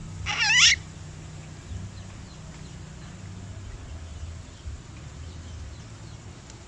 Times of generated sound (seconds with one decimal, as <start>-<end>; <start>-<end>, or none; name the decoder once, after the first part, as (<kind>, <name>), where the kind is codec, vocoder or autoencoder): 4.1-4.9 (vocoder, BigVGAN v2)